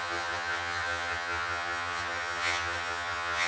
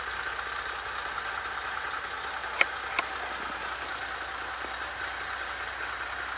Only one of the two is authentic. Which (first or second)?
second